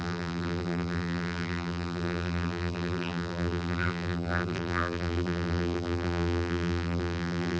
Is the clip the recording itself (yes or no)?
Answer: no